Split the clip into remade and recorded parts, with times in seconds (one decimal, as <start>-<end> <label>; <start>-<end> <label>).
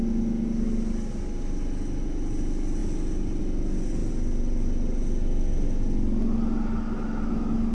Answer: 0.0-7.7 recorded